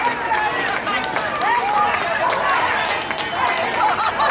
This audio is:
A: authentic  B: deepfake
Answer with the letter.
A